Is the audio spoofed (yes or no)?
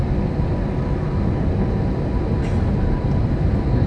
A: no